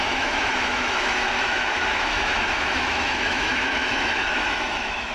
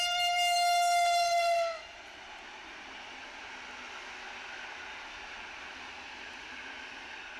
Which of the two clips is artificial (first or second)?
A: first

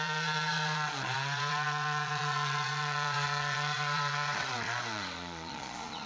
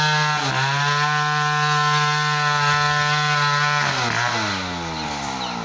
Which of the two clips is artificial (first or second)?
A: first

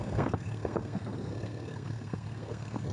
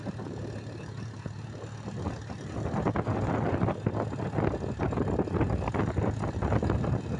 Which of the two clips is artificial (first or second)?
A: first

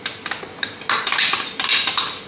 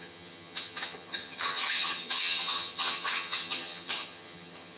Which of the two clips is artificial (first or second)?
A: second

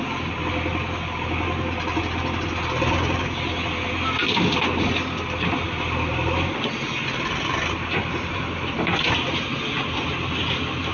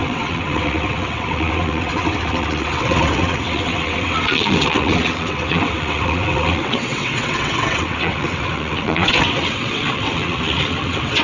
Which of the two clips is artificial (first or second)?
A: second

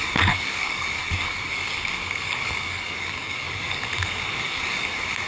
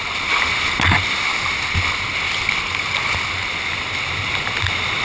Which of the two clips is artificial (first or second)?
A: first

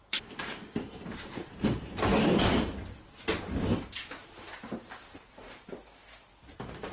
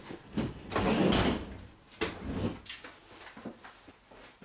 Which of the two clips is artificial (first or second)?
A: first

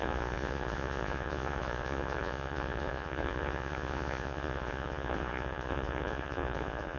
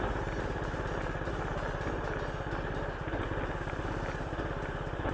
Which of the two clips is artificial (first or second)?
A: first